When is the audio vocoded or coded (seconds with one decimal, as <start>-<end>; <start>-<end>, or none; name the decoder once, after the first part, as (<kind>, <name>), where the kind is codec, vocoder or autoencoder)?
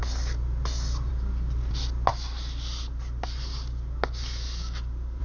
none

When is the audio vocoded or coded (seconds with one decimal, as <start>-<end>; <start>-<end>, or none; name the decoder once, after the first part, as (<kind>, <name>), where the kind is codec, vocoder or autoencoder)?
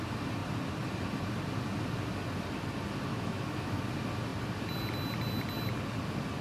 3.1-3.8 (autoencoder, DAC-VAE)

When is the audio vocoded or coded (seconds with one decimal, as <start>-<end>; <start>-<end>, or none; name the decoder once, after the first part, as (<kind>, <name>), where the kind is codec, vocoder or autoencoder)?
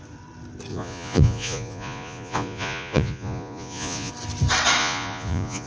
0.7-4.1 (vocoder, Vocos); 4.8-5.7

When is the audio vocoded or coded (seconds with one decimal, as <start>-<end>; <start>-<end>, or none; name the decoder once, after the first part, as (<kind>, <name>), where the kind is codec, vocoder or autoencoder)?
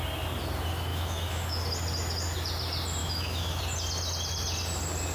0.9-1.6 (autoencoder, DAC-VAE); 3.0-3.6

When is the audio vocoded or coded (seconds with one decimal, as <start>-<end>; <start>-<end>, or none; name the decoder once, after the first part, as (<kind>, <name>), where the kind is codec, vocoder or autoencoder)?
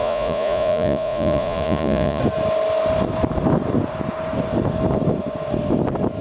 0.0-2.2 (vocoder, Vocos)